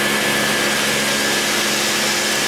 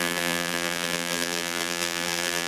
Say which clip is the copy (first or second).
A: second